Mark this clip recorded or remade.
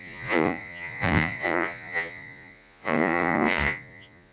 remade